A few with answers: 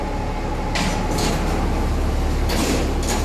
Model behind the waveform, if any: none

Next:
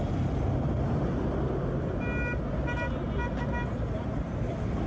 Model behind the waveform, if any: none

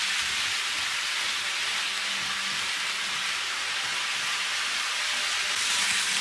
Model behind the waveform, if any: none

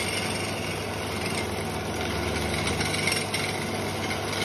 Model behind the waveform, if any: none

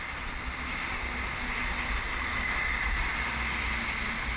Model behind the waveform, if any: none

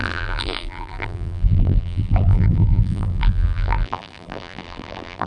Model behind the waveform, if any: vocoder, BigVGAN v2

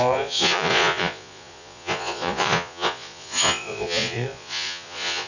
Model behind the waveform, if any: vocoder, Vocos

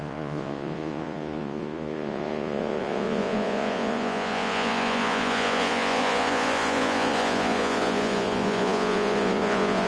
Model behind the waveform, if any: vocoder, Vocos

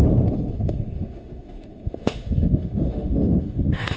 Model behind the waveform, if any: autoencoder, DAC-VAE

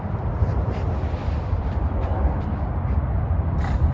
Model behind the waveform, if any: none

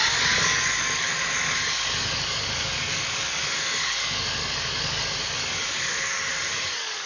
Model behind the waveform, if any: codec, DAC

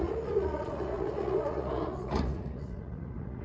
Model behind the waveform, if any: vocoder, Vocos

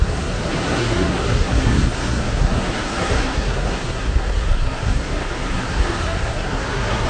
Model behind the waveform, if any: codec, SNAC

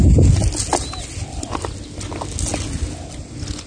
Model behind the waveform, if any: none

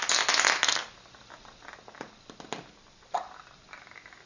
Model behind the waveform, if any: none